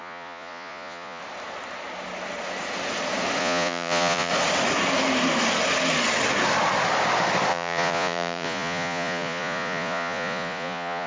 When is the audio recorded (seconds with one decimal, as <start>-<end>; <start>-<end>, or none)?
1.2-3.4; 4.3-7.5

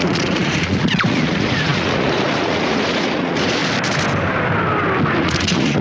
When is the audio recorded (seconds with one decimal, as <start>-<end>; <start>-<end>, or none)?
3.6-5.2

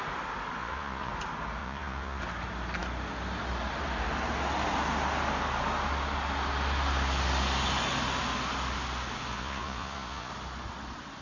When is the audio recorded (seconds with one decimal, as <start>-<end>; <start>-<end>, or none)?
0.0-0.6; 1.1-1.6; 2.2-9.3; 10.3-11.2